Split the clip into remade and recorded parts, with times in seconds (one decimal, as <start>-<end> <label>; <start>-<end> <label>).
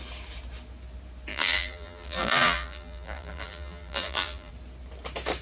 0.0-1.3 recorded; 1.3-4.5 remade; 4.5-5.4 recorded